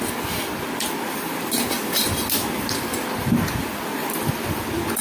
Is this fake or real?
real